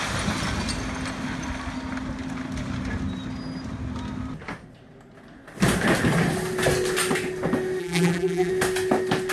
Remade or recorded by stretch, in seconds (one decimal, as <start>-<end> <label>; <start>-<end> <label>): 0.0-7.8 recorded; 7.8-8.5 remade; 8.5-9.3 recorded